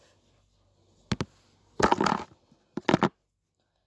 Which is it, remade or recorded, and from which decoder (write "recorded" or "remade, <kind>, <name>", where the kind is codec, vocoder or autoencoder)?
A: recorded